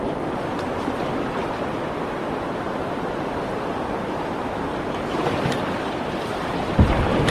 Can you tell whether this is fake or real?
fake